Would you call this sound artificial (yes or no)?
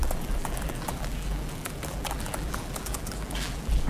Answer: yes